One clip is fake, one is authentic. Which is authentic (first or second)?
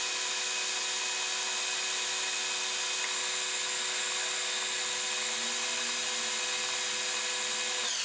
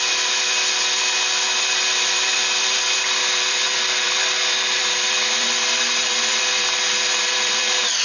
first